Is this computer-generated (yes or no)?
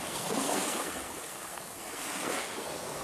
yes